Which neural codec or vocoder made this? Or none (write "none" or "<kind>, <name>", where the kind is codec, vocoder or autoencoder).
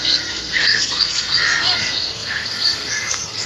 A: codec, SNAC